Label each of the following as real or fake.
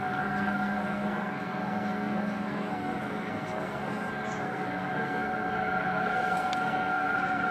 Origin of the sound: fake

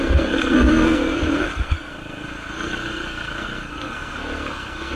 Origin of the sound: fake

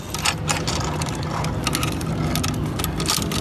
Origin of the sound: real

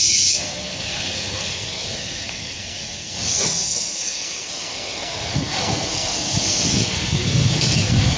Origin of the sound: fake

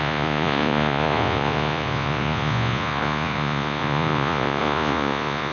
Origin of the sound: fake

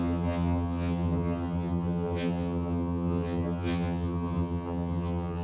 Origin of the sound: fake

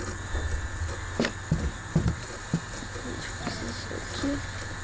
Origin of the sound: real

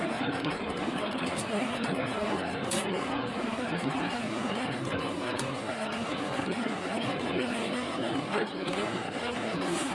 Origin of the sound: fake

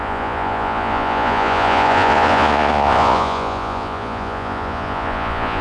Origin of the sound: fake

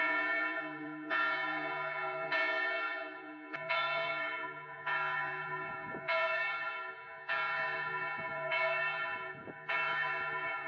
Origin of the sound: fake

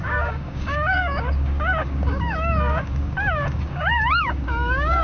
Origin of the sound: fake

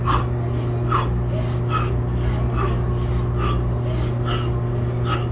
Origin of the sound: real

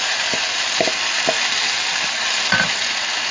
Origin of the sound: real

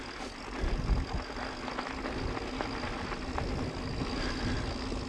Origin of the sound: real